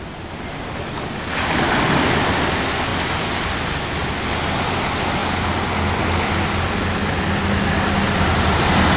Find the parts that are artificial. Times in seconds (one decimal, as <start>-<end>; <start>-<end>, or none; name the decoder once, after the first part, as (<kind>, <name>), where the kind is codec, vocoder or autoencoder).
none